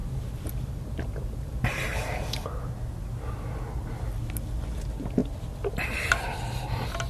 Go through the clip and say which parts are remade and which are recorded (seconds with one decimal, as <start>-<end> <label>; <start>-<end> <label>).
0.0-2.7 remade; 2.7-5.2 recorded; 5.2-6.1 remade; 6.1-7.1 recorded